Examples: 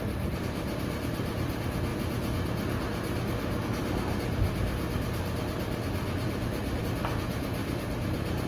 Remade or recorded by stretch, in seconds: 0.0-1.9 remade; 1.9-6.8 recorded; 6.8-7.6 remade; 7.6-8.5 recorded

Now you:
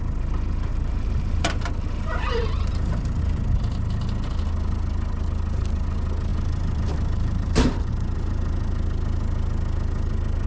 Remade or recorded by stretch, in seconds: 0.0-0.7 recorded; 0.7-3.2 remade; 3.2-6.3 recorded; 6.3-7.9 remade; 7.9-10.5 recorded

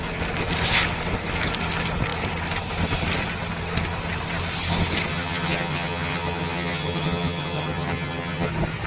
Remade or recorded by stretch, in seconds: 0.0-5.1 recorded; 5.1-8.5 remade; 8.5-8.9 recorded

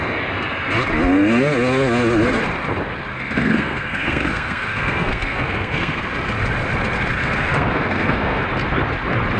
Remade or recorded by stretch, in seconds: 0.0-3.1 recorded; 3.1-6.1 remade; 6.1-7.2 recorded; 7.2-8.4 remade; 8.4-9.4 recorded

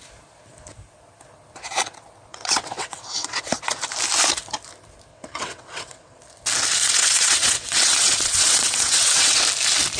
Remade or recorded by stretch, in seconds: 0.0-2.3 recorded; 2.3-3.4 remade; 3.4-5.1 recorded; 5.1-6.2 remade; 6.2-6.8 recorded; 6.8-9.4 remade; 9.4-10.0 recorded

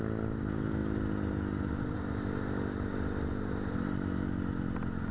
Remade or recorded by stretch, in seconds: 0.0-5.1 recorded

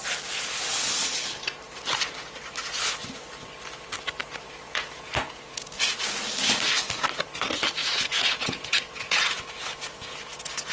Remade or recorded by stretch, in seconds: 0.0-4.2 recorded; 4.2-5.8 remade; 5.8-7.8 recorded; 7.8-10.7 remade